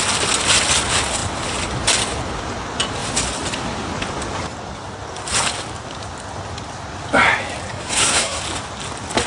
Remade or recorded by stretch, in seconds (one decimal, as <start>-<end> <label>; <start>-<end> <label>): 0.0-7.7 recorded; 7.7-8.4 remade; 8.4-9.3 recorded